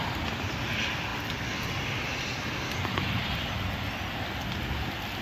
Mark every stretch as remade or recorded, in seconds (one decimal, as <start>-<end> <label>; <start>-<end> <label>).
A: 0.0-5.2 recorded